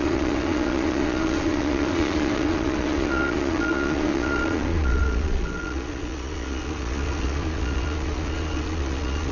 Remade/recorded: remade